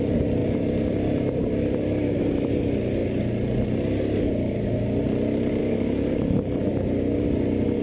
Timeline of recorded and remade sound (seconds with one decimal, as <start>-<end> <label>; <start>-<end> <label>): 0.0-5.6 recorded; 5.6-6.6 remade; 6.6-7.8 recorded